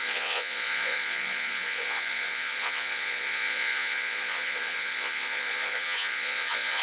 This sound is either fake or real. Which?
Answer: fake